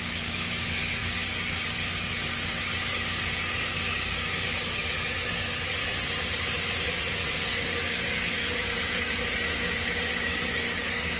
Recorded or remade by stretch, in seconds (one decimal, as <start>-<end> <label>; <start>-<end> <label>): 0.0-4.8 remade; 4.8-5.3 recorded; 5.3-5.8 remade; 5.8-7.3 recorded; 7.3-11.2 remade